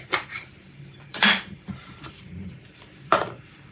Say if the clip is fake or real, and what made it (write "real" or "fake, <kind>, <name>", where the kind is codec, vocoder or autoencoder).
fake, vocoder, BigVGAN v2